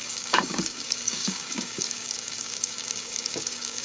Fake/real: fake